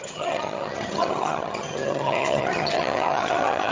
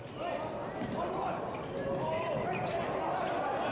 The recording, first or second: second